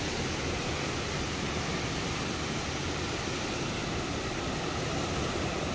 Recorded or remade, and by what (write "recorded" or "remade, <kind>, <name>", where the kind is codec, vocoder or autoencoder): recorded